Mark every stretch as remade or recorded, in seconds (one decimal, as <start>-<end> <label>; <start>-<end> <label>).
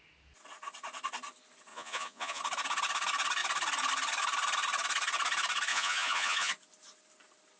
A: 0.0-1.7 recorded; 1.7-2.4 remade; 2.4-5.7 recorded; 5.7-6.5 remade; 6.5-7.6 recorded